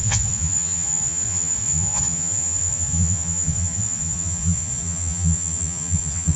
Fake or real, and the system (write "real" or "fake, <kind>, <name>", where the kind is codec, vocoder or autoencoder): fake, vocoder, Vocos